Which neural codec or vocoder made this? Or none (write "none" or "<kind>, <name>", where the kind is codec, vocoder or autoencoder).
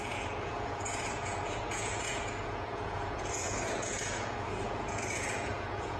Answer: vocoder, Vocos